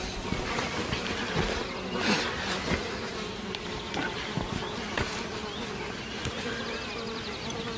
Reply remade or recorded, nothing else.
recorded